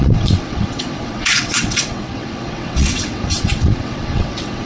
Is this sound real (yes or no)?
no